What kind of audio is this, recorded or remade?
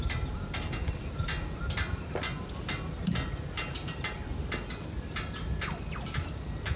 recorded